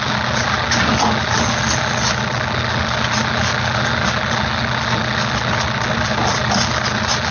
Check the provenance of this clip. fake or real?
real